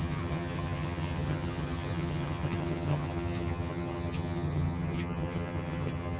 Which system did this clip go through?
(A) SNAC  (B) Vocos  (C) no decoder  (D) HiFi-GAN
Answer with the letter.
D